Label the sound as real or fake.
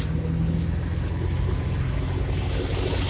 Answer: real